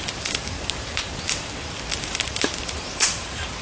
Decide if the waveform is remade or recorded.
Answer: remade